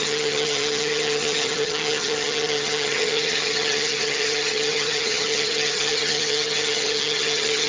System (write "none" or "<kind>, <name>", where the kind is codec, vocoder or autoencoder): vocoder, HiFi-GAN